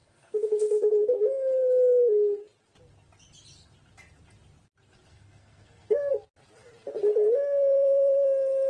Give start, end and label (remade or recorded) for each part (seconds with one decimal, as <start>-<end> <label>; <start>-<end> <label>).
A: 0.0-0.9 remade; 0.9-5.1 recorded; 5.1-6.1 remade; 6.1-8.7 recorded